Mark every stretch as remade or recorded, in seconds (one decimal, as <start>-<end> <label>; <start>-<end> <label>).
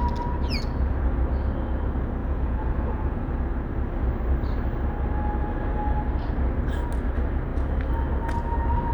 0.0-2.2 recorded; 2.2-3.4 remade; 3.4-8.9 recorded